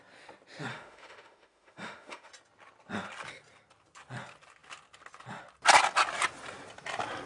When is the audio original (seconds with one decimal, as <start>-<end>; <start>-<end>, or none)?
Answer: 0.0-0.7; 2.3-7.3